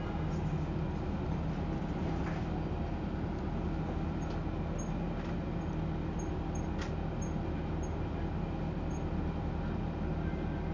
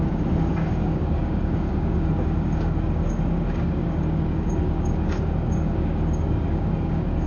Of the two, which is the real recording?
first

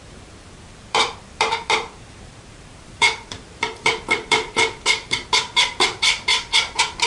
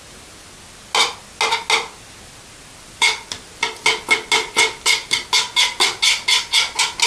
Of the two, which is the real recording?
second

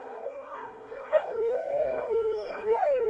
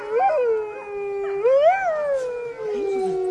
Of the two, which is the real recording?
second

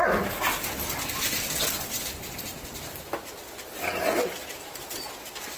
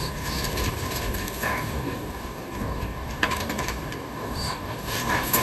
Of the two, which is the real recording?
first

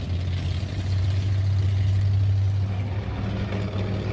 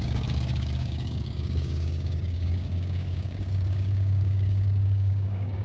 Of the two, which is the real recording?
first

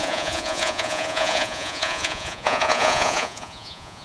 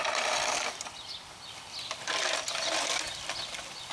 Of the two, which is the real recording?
second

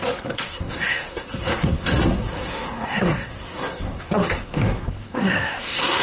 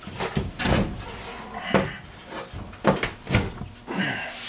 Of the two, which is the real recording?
second